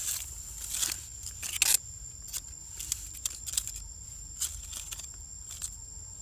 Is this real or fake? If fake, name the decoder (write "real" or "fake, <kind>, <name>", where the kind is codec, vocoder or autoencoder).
real